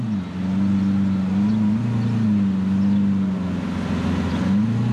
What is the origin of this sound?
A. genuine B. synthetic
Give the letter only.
A